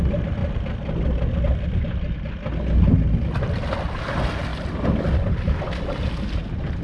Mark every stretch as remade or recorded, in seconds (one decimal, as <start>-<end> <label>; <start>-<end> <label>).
0.0-4.5 recorded; 4.5-6.0 remade; 6.0-6.8 recorded